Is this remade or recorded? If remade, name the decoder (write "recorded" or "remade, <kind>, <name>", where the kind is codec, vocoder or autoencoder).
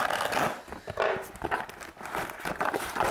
recorded